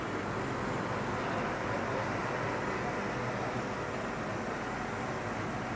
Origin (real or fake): real